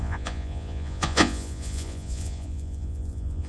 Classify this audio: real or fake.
fake